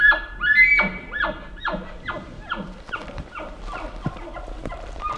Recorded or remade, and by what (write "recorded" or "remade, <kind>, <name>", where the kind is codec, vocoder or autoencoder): remade, vocoder, BigVGAN v2